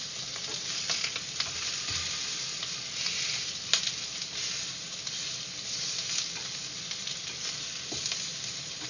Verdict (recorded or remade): recorded